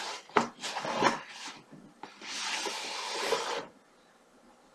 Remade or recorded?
recorded